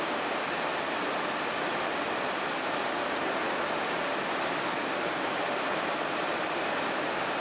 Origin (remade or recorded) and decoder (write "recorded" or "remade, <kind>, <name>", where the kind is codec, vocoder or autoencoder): recorded